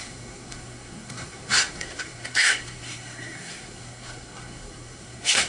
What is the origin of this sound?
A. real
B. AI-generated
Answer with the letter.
B